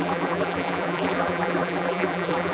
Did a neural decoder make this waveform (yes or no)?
yes